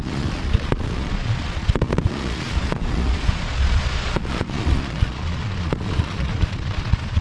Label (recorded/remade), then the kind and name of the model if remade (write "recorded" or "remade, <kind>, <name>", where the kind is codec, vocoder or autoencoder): remade, vocoder, Vocos